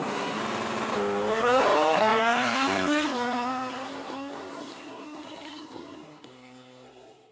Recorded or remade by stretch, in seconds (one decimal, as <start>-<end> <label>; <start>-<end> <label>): 0.0-0.4 remade; 0.4-1.3 recorded; 1.3-7.3 remade